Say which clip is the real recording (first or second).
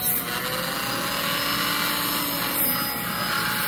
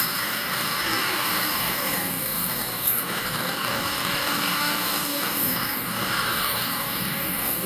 first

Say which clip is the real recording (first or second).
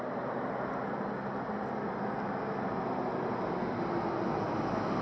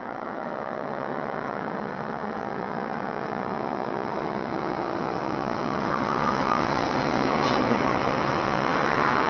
first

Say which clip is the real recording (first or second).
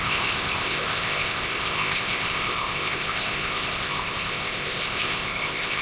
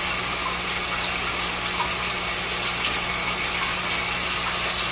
second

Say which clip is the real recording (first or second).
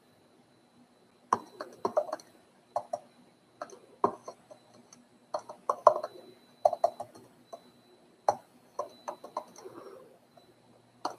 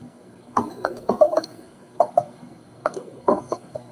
first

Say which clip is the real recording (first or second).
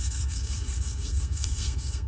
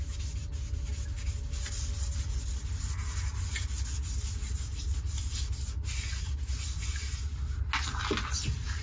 second